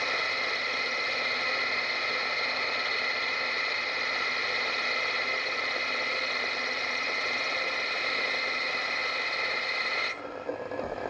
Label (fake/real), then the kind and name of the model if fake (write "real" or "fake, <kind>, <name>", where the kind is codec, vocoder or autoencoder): real